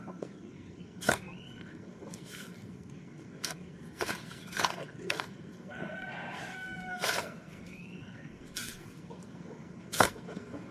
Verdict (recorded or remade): remade